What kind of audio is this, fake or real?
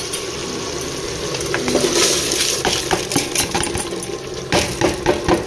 real